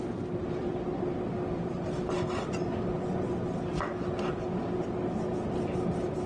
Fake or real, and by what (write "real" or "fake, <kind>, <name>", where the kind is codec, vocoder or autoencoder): real